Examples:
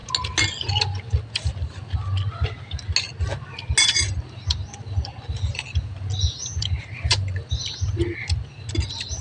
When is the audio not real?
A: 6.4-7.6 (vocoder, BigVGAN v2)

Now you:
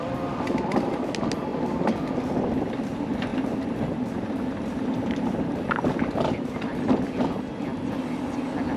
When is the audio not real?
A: 3.3-6.8 (vocoder, BigVGAN v2)